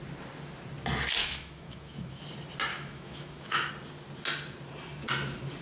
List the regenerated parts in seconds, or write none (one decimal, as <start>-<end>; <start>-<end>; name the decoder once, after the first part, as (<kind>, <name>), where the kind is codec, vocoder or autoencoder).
1.2-2.2 (autoencoder, DAC-VAE); 2.7-3.7